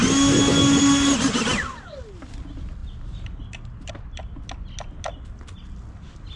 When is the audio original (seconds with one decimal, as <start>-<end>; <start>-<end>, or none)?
0.0-6.4